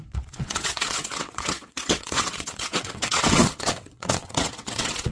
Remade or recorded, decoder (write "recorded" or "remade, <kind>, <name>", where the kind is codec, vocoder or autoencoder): remade, vocoder, WaveNeXt